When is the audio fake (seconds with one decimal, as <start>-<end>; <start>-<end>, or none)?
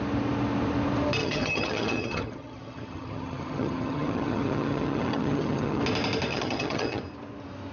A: 1.2-5.8; 6.3-7.0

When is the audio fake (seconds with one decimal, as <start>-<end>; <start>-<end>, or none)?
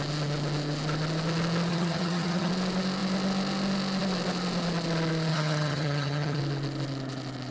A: 1.7-2.5; 5.3-6.4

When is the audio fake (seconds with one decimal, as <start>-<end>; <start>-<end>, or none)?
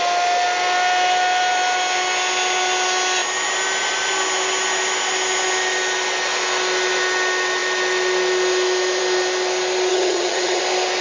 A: 9.9-10.6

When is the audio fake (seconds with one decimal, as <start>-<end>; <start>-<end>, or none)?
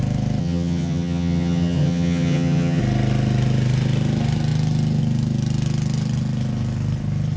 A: 0.4-2.8